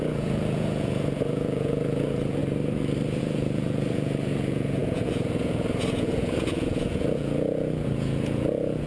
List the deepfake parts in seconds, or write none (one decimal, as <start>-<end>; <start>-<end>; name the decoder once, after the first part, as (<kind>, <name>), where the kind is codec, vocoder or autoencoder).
0.0-2.4 (vocoder, Vocos); 3.2-8.9